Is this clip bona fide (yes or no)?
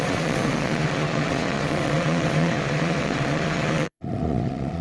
no